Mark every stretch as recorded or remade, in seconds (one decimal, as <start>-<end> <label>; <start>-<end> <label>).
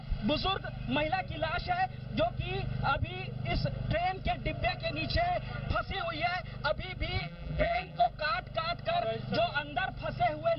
0.0-7.2 recorded; 7.2-8.1 remade; 8.1-10.6 recorded